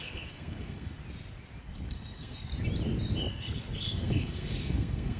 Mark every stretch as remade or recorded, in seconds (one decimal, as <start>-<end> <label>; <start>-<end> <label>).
0.0-1.0 remade; 1.0-1.6 recorded; 1.6-2.5 remade; 2.5-3.3 recorded; 3.3-5.2 remade